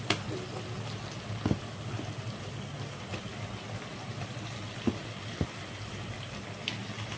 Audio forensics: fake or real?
real